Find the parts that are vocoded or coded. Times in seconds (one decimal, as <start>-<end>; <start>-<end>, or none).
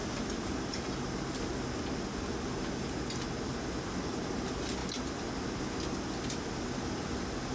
none